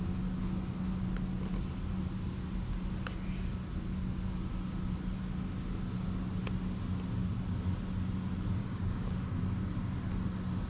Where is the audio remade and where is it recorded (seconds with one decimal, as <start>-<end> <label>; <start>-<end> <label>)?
0.0-8.6 recorded; 8.6-9.4 remade; 9.4-10.7 recorded